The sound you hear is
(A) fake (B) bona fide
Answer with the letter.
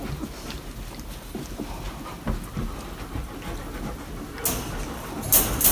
B